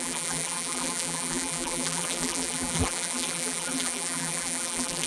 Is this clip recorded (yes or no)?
no